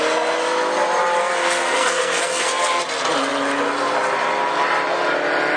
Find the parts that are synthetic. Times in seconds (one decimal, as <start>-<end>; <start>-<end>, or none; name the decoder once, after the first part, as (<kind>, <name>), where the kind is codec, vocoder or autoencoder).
1.2-2.8 (codec, SNAC)